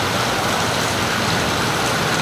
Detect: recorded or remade recorded